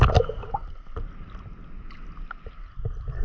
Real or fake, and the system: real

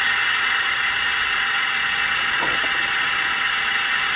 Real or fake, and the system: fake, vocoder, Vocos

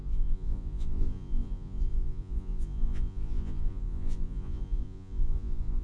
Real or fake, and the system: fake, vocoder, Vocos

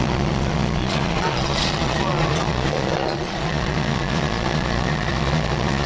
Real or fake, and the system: fake, vocoder, Vocos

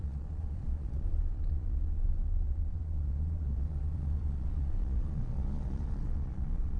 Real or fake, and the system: fake, vocoder, Vocos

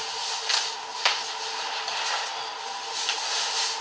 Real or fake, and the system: real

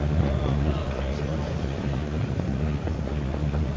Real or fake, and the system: fake, vocoder, Vocos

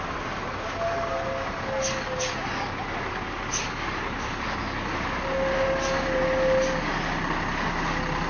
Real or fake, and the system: real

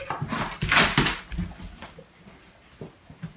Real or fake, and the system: real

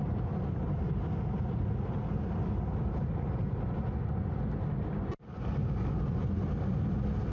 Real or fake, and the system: real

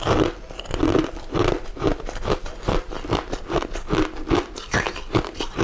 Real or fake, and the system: real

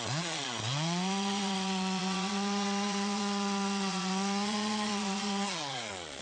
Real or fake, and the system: fake, vocoder, Vocos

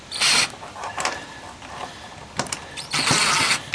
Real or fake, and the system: real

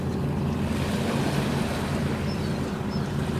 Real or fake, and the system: real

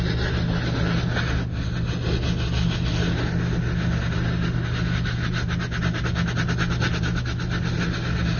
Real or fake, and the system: real